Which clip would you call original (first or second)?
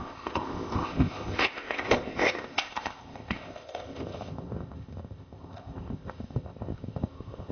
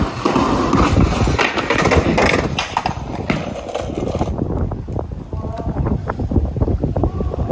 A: second